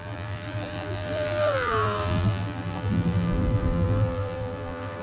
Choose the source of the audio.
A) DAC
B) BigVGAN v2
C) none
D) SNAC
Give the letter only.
B